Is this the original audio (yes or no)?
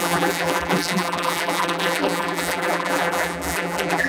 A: no